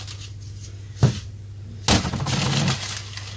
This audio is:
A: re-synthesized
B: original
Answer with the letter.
B